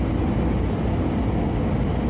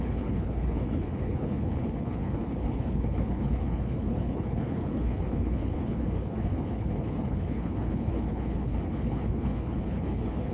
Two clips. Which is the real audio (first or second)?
first